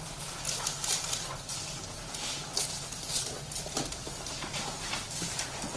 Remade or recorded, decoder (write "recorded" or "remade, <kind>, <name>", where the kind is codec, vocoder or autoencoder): recorded